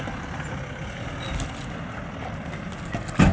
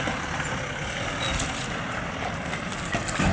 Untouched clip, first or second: first